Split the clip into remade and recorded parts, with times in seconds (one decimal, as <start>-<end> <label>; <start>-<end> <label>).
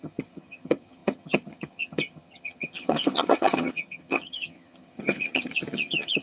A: 0.0-6.2 remade